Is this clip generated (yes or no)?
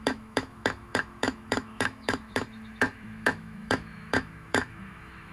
yes